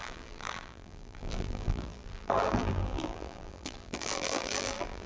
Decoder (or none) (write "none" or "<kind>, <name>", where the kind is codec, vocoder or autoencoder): vocoder, BigVGAN v2